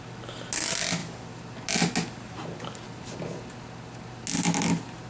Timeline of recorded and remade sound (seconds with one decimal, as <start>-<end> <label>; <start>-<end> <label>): 0.0-5.1 recorded